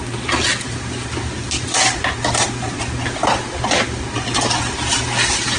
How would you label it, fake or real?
real